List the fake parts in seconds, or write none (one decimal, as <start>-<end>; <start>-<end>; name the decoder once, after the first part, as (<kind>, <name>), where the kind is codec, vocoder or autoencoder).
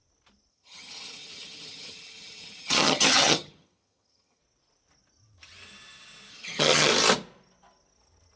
0.5-4.4 (vocoder, HiFi-GAN); 6.3-6.9